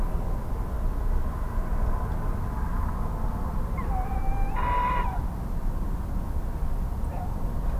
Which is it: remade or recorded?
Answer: recorded